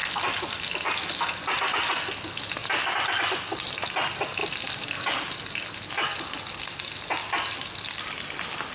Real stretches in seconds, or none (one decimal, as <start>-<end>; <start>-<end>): 0.0-8.7